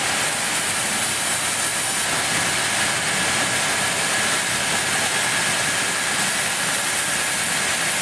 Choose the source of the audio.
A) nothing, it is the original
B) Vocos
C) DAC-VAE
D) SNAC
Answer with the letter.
A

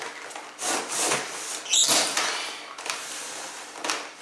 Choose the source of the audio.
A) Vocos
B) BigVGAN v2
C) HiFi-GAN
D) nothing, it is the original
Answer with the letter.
D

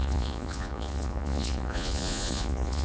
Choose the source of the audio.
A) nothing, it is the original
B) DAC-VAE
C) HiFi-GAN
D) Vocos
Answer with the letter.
D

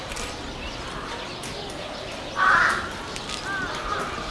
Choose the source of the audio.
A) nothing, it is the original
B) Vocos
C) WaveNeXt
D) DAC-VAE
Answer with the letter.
A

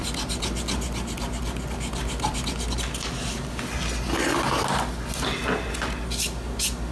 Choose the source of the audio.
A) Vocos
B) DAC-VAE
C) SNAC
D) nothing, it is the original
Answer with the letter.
D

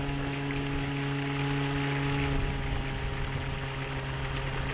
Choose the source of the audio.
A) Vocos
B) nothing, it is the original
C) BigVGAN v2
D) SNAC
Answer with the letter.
B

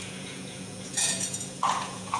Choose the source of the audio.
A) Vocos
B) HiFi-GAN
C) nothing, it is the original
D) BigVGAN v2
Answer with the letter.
A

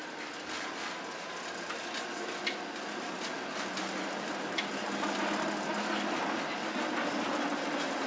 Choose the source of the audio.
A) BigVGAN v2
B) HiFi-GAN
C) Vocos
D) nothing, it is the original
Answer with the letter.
D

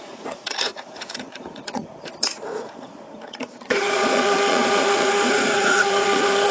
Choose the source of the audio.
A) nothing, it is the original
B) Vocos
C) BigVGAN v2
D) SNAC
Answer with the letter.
B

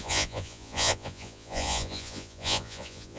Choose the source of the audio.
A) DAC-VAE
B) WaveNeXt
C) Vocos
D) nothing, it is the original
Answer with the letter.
C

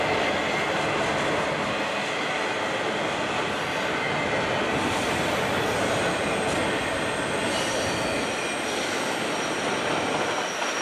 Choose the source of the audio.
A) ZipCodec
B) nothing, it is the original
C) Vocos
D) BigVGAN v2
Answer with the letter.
B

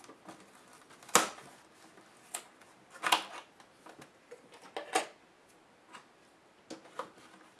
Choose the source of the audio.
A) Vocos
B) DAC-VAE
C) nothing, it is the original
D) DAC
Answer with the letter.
C